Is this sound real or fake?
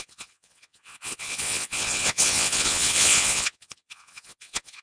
fake